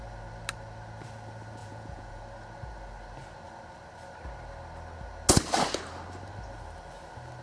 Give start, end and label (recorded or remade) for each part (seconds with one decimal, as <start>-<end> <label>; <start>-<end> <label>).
0.0-1.6 recorded; 1.6-2.2 remade; 2.2-7.4 recorded